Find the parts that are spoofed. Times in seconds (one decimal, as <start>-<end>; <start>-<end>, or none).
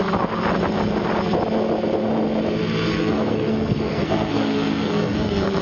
2.9-5.6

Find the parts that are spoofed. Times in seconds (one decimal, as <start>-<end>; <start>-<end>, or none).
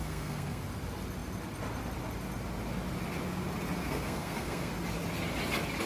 0.0-0.6; 3.8-4.7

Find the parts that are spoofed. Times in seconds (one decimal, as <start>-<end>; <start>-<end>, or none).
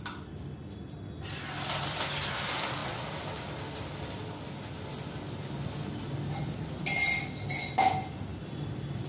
none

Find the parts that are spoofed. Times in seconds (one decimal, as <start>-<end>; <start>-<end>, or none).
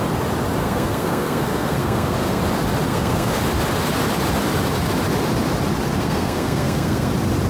0.6-2.4; 2.9-3.4; 6.0-7.1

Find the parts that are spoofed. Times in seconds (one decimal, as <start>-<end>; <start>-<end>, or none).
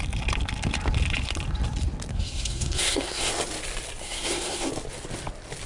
2.1-3.3; 4.0-4.7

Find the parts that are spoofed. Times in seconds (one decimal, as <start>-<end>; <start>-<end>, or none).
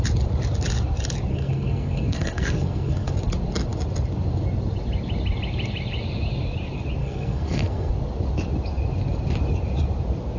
1.3-3.1; 7.0-7.9